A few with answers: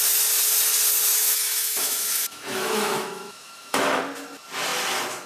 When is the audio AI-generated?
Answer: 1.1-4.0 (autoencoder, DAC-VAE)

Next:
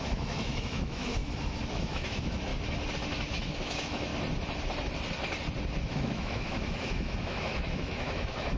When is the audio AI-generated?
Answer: 0.0-1.2 (autoencoder, DAC-VAE); 1.7-2.5; 3.1-4.1; 5.9-8.6

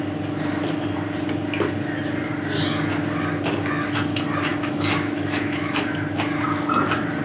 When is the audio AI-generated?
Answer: 4.5-5.8 (autoencoder, DAC-VAE)

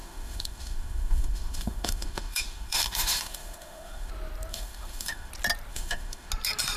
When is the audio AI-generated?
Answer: 0.0-4.1 (autoencoder, DAC-VAE); 4.5-5.3; 5.7-6.3

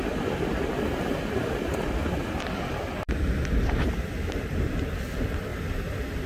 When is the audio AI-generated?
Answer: none

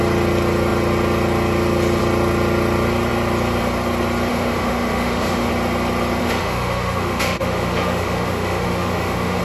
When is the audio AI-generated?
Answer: 4.3-5.5 (autoencoder, DAC-VAE); 6.2-9.4